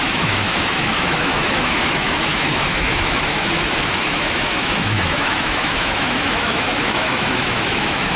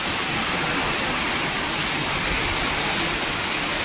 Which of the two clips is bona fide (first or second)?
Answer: second